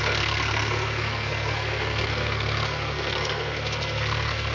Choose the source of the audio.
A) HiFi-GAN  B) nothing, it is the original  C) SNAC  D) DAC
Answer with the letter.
C